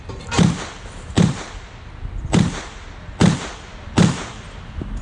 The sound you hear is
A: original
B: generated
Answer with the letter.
A